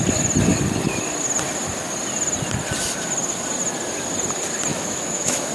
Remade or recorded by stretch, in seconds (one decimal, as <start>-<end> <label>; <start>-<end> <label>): 0.0-4.7 recorded; 4.7-5.5 remade